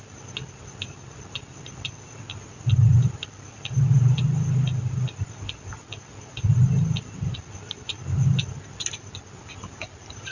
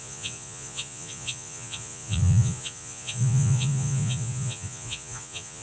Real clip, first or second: first